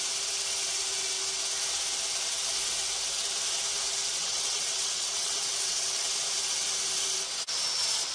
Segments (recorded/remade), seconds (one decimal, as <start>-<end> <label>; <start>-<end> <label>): 0.0-4.2 recorded; 4.2-6.1 remade; 6.1-8.1 recorded